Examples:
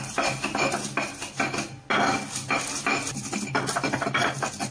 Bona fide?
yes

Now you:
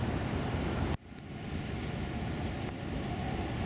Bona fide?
yes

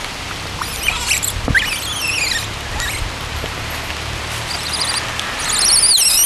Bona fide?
yes